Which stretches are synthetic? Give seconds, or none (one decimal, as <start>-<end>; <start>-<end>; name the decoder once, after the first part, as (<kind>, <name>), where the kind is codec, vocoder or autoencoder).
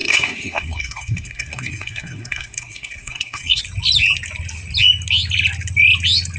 0.0-3.6 (codec, SNAC)